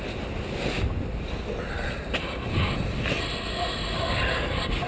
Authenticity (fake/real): real